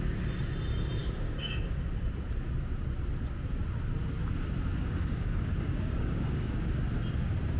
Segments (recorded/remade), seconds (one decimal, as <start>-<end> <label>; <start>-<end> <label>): 0.0-1.0 recorded; 1.0-1.8 remade; 1.8-4.8 recorded; 4.8-6.7 remade; 6.7-7.6 recorded